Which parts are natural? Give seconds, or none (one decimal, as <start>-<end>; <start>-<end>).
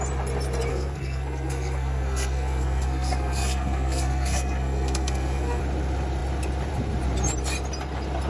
0.0-0.7; 5.6-8.3